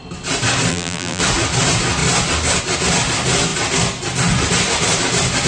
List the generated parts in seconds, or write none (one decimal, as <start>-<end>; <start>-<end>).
0.7-1.2